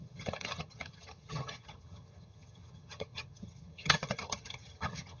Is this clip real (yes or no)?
no